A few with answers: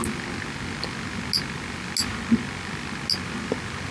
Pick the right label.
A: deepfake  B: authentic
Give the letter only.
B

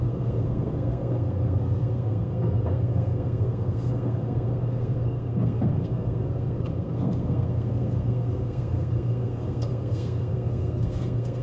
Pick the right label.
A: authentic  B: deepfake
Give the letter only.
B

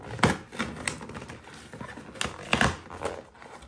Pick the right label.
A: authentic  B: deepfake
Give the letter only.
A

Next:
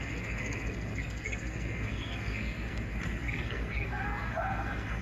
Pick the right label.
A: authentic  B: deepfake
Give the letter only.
B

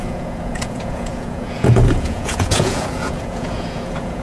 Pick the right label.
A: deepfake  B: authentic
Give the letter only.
A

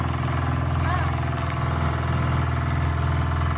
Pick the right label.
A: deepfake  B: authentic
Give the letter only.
B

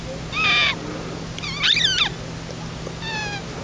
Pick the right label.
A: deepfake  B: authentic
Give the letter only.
B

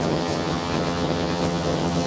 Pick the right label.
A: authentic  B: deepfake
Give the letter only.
B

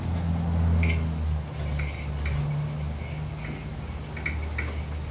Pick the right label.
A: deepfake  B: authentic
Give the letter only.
B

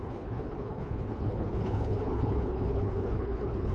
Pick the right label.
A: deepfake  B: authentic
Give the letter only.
A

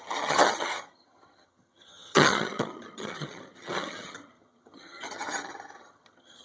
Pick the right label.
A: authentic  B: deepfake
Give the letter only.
B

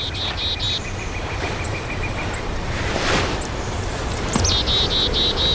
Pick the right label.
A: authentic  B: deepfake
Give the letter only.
B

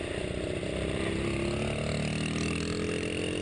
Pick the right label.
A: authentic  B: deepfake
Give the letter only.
A